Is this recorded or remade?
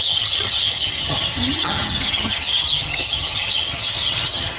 remade